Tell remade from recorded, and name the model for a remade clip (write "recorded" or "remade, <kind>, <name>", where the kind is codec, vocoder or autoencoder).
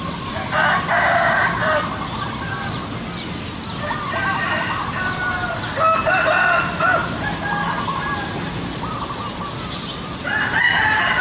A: recorded